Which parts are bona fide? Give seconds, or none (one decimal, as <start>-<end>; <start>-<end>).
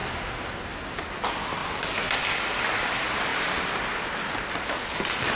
0.0-5.4